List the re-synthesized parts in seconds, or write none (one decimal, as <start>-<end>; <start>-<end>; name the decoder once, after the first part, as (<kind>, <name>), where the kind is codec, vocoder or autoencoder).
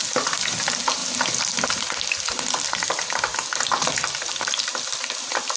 none